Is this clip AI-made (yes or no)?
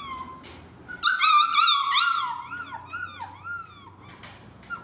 no